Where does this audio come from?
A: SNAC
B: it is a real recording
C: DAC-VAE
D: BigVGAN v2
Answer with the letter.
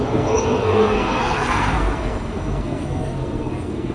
A